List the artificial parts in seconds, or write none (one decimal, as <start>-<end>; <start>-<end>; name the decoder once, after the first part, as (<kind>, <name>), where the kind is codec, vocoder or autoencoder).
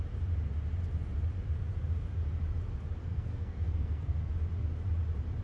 3.0-4.3 (codec, SNAC)